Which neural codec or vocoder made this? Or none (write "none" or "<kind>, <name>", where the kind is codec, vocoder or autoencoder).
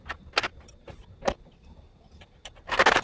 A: none